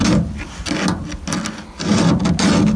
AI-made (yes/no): no